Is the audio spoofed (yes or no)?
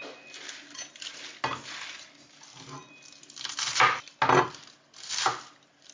no